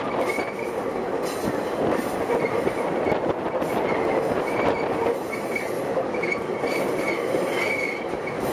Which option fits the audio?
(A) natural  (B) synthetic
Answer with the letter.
A